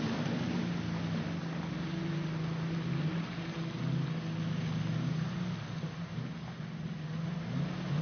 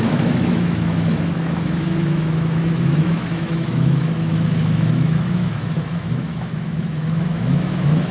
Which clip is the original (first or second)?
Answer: first